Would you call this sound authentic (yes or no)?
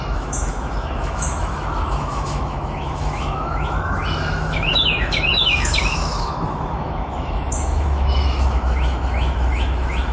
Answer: no